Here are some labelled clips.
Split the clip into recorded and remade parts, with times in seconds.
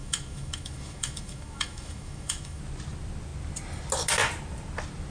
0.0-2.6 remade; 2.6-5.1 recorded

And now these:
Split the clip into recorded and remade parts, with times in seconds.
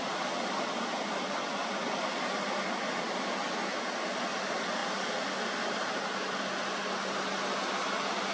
0.0-8.3 recorded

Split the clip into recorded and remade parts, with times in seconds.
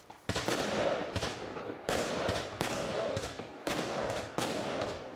0.0-1.3 recorded; 1.3-2.1 remade; 2.1-2.5 recorded; 2.5-5.2 remade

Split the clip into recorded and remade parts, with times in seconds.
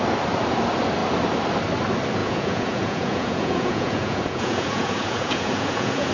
0.0-2.2 recorded; 2.2-6.1 remade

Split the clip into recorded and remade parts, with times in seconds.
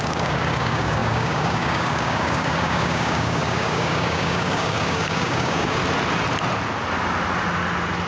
0.0-5.8 remade; 5.8-8.1 recorded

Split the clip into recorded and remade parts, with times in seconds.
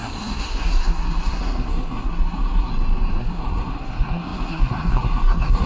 0.0-2.7 remade; 2.7-3.2 recorded; 3.2-5.7 remade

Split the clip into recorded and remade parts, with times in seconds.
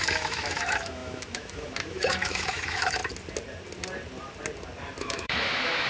0.0-3.0 remade; 3.0-5.0 recorded; 5.0-5.9 remade